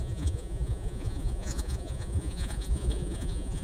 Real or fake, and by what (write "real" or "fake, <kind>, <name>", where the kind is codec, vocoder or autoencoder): fake, vocoder, Vocos